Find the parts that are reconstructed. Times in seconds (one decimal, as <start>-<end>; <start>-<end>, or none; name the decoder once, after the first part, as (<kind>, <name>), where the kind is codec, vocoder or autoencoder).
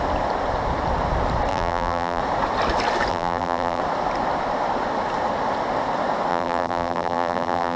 1.5-2.2 (vocoder, BigVGAN v2); 3.1-3.8; 6.3-7.8